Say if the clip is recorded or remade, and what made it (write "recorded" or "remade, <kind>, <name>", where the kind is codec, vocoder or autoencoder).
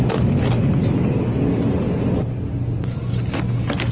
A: recorded